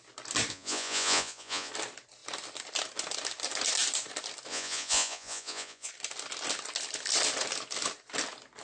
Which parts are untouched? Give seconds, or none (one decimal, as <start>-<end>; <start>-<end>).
0.0-0.5; 1.7-4.5; 5.9-8.6